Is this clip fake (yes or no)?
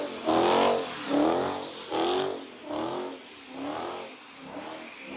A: no